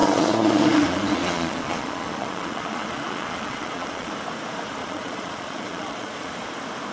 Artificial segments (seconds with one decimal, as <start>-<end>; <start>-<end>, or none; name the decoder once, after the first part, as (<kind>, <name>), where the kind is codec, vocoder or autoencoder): 0.0-4.1 (vocoder, Vocos); 4.8-6.3